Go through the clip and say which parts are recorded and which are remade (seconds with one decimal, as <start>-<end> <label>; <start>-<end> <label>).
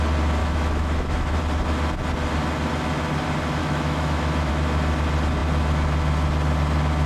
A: 0.0-0.4 recorded; 0.4-1.4 remade; 1.4-3.6 recorded; 3.6-4.5 remade; 4.5-7.1 recorded